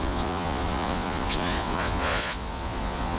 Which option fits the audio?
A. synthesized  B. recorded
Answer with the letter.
A